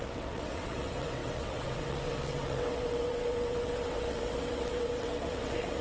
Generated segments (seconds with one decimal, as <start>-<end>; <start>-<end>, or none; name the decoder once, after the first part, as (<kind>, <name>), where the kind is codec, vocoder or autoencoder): 0.0-5.8 (vocoder, WaveNeXt)